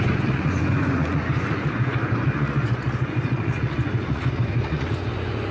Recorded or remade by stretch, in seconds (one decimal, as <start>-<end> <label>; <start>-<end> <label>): 0.0-5.5 remade